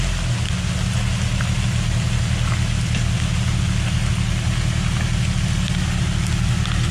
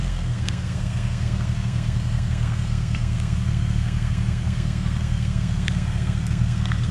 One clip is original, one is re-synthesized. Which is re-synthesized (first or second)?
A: second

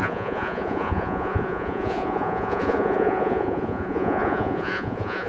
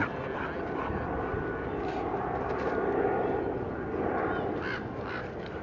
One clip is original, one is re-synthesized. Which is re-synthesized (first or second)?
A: first